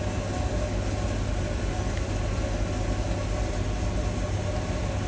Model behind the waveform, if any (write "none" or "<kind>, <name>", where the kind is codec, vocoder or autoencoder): none